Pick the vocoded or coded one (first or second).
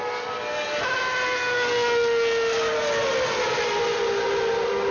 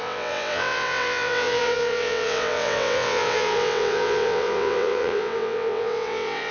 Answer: second